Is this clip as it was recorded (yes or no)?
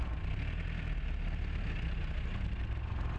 yes